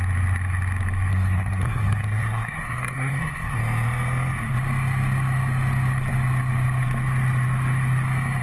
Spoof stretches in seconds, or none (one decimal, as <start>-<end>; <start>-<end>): 1.1-3.6